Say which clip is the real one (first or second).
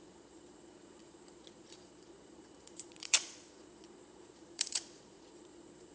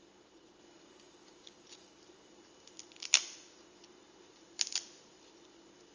second